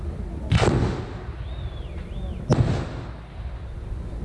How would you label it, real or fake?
real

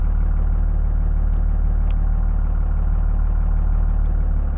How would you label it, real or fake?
real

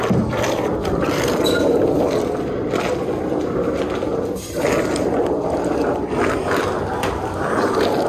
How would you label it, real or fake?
real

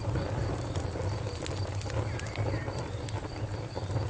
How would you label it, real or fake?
real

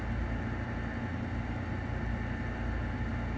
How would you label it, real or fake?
real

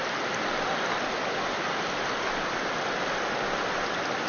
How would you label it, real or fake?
real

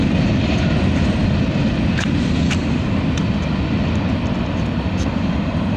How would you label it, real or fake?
fake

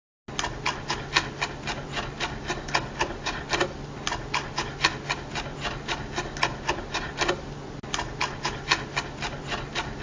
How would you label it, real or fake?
real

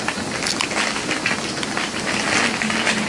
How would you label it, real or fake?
real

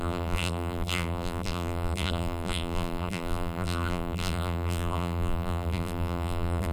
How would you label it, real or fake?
fake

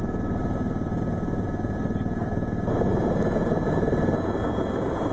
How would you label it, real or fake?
fake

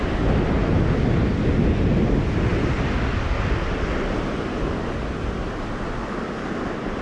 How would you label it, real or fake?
real